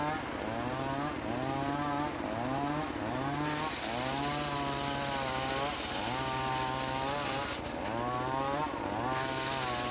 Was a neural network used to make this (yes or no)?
no